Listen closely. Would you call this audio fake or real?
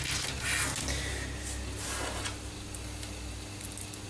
real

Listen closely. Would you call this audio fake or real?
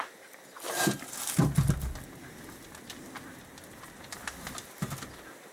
real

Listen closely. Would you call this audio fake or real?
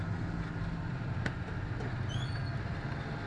real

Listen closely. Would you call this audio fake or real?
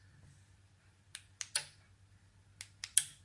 real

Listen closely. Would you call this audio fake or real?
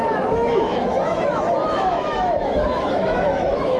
fake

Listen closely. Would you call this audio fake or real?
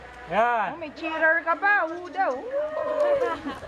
real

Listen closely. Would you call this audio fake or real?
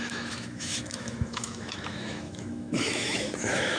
fake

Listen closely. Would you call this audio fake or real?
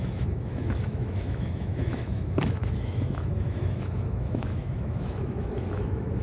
fake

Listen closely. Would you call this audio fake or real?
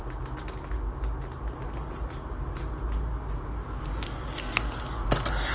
real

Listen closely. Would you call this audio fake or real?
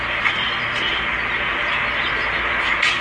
real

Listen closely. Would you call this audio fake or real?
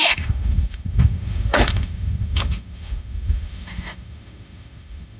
fake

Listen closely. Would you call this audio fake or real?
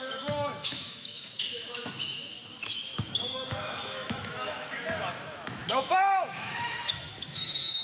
fake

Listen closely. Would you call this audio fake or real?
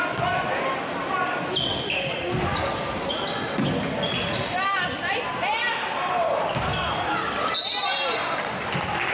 real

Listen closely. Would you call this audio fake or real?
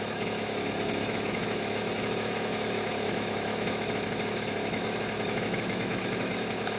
fake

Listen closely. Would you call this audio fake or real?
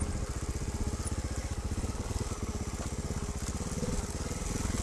real